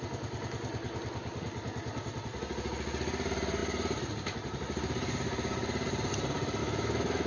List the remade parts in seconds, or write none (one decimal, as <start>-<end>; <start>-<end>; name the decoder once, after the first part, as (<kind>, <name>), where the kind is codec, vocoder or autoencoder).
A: 6.6-7.3 (autoencoder, DAC-VAE)